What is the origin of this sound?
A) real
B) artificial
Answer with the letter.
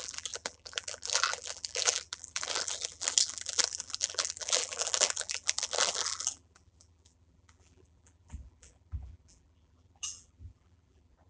B